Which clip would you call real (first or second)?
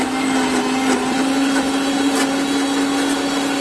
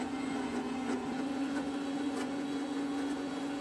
first